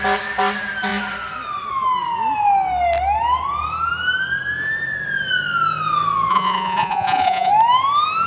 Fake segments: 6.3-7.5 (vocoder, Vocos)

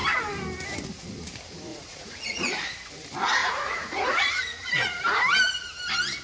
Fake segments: 1.7-2.6 (vocoder, Vocos); 3.4-5.0

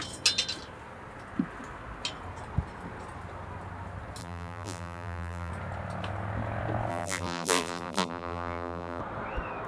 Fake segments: 4.2-5.5 (vocoder, BigVGAN v2); 6.9-9.0

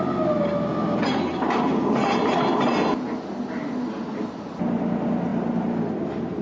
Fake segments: none